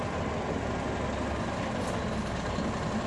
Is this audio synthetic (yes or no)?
no